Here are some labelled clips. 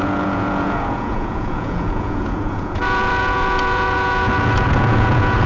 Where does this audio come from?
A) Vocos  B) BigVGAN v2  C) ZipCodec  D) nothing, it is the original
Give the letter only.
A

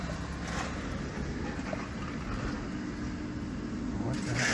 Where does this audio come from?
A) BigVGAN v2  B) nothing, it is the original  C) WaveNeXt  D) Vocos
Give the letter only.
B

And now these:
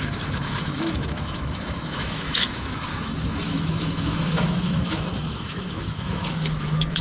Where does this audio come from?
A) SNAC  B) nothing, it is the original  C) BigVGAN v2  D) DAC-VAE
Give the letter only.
D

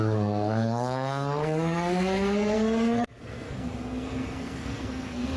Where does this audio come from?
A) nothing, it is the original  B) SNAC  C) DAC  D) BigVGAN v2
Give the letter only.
B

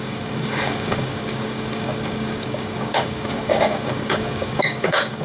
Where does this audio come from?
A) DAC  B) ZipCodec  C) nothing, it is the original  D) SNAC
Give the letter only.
A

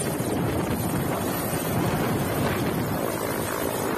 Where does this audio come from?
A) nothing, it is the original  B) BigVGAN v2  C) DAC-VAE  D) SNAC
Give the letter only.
A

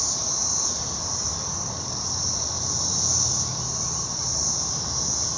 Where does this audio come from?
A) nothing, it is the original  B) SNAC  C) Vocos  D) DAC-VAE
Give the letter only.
A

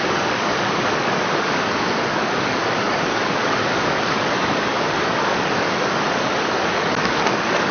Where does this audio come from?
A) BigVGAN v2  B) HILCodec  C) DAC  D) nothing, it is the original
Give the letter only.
C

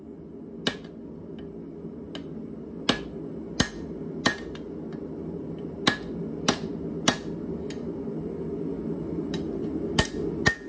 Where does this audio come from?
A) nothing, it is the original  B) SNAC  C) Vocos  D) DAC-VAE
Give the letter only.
A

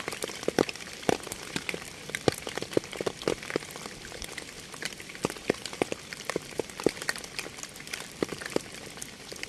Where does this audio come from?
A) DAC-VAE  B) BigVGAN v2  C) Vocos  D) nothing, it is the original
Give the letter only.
B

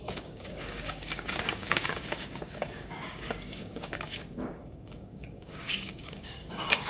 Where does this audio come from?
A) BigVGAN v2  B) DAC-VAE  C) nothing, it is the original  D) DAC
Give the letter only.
D